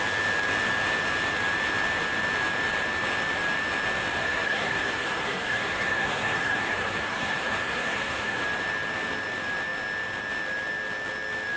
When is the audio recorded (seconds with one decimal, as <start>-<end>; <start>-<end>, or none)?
0.0-4.2; 8.4-11.6